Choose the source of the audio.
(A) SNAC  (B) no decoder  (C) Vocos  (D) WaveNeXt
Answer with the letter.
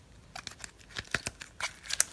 B